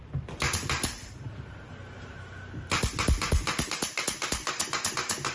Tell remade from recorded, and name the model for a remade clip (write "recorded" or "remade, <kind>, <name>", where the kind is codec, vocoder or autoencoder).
recorded